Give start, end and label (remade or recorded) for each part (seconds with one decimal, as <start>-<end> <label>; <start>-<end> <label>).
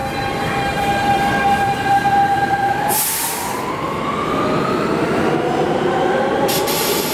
0.0-4.0 remade; 4.0-7.1 recorded